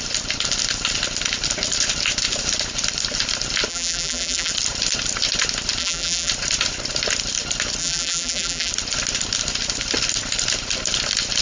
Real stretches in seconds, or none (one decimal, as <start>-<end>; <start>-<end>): 0.0-3.7; 4.5-5.8; 6.3-7.8; 8.7-11.4